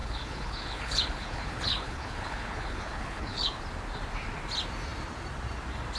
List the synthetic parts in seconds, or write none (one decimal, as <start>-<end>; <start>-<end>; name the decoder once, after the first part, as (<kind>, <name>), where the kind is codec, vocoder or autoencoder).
0.0-3.6 (codec, HILCodec)